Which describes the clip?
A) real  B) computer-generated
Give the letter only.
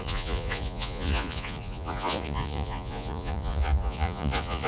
B